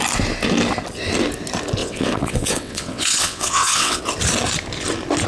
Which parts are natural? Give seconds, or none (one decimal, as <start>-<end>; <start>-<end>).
0.0-1.8; 4.0-5.3